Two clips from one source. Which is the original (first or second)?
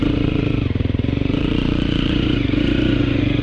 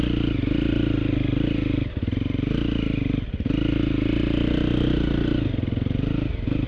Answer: second